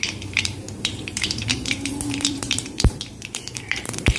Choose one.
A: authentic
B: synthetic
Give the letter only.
B